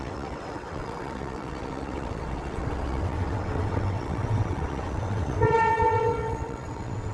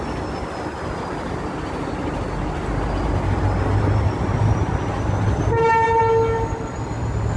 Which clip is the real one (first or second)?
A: second